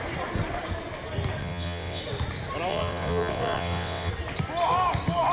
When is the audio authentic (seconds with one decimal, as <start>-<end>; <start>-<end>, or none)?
0.0-1.4; 2.0-2.7; 4.1-5.3